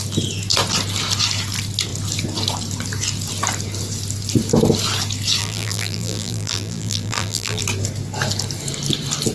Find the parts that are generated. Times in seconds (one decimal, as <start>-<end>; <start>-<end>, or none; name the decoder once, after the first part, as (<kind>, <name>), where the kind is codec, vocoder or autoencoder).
5.4-7.6 (vocoder, BigVGAN v2)